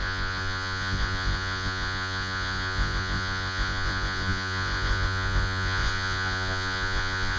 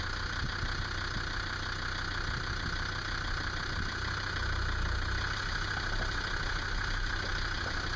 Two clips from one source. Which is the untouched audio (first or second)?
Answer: second